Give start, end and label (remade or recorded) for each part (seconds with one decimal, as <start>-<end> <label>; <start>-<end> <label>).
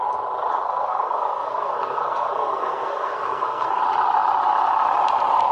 0.0-0.5 recorded; 0.5-3.8 remade; 3.8-5.5 recorded